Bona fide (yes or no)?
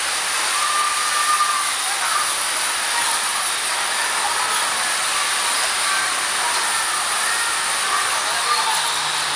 yes